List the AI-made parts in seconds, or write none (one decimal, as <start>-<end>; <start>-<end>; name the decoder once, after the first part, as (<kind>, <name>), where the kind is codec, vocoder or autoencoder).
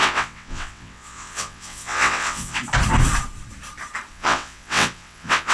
0.0-2.6 (vocoder, WaveNeXt); 4.1-5.5